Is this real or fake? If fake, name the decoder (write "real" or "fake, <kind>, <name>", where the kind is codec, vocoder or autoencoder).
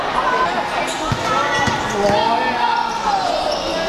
real